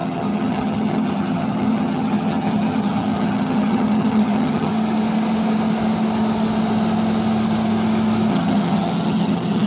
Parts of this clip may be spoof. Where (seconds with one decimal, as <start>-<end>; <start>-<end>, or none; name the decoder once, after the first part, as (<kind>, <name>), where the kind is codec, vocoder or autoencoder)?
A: 0.0-4.7 (vocoder, HiFi-GAN); 8.3-9.7